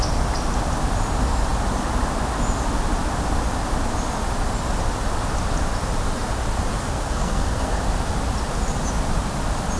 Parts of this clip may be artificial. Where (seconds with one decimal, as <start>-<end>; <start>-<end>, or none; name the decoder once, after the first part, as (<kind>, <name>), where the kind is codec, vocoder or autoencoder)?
6.7-7.8 (codec, SNAC)